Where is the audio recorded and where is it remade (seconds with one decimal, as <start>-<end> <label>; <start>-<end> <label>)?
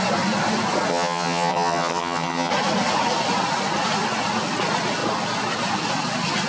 0.0-0.9 recorded; 0.9-2.5 remade; 2.5-6.5 recorded